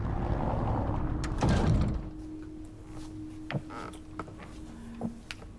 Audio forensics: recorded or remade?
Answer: recorded